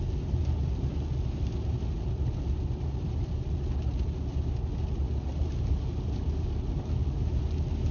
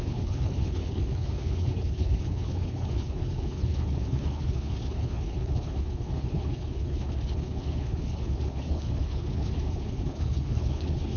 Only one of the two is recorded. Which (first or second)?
first